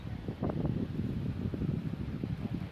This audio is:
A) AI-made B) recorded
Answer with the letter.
A